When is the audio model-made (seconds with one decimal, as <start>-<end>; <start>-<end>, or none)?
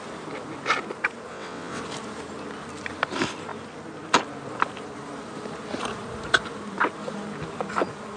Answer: 1.3-1.8